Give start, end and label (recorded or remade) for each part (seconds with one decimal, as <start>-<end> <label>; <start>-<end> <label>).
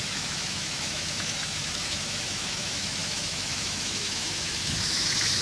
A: 0.0-5.4 remade